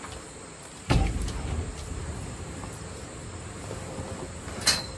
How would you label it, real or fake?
real